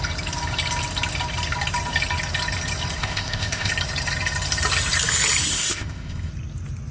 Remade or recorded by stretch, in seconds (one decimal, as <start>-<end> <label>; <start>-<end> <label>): 0.0-3.0 recorded; 3.0-3.7 remade; 3.7-5.5 recorded; 5.5-6.3 remade; 6.3-6.9 recorded